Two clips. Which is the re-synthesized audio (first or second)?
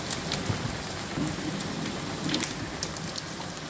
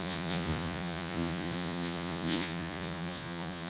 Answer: second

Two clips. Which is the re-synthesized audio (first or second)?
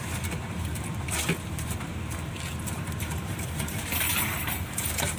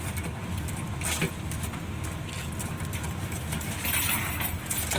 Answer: first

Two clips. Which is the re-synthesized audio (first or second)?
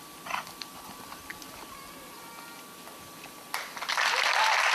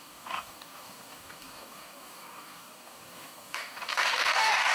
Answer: second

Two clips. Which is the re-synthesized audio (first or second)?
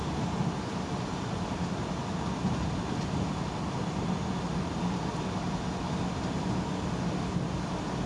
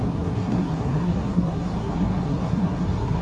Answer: second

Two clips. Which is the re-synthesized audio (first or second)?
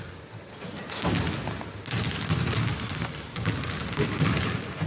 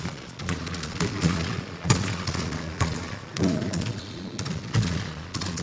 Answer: second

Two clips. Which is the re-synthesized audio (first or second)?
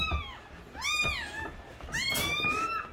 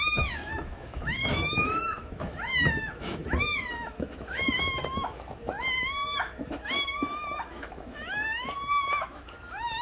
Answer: second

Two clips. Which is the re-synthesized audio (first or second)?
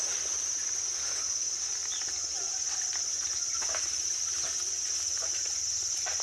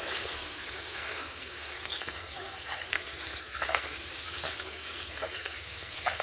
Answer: second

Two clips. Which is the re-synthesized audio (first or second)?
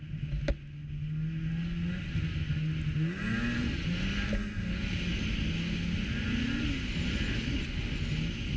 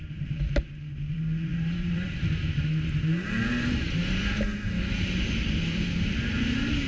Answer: second